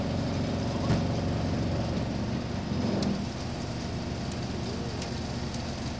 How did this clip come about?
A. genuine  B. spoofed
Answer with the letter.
A